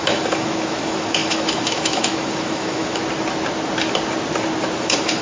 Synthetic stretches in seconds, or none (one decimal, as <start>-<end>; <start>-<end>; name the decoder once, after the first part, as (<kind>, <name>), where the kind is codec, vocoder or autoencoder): 0.0-3.0 (autoencoder, DAC-VAE); 4.8-5.2